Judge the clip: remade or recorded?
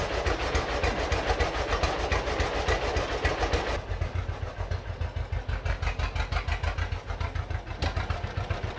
recorded